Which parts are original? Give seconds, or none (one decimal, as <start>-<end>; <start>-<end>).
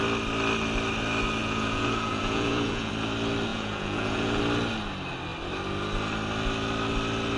0.0-1.4; 2.9-3.5; 4.4-7.4